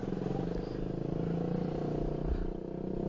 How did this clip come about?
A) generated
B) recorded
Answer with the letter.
B